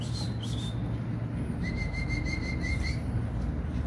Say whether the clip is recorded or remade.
recorded